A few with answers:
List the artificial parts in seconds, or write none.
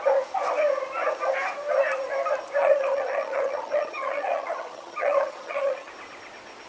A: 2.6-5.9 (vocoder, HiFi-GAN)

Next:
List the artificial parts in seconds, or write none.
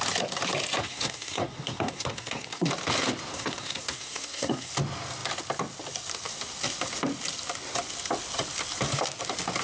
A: 0.8-2.7 (codec, SNAC); 3.3-4.7